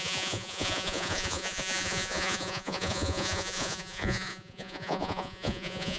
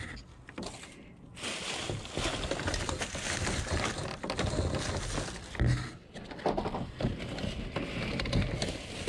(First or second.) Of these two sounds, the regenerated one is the first